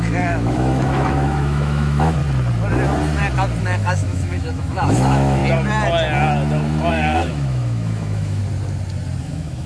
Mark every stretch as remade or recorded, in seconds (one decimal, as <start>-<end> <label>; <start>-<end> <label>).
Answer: 0.0-2.2 remade; 2.2-3.6 recorded; 3.6-5.4 remade; 5.4-6.9 recorded; 6.9-8.4 remade; 8.4-9.2 recorded; 9.2-9.7 remade